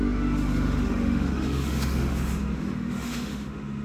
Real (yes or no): no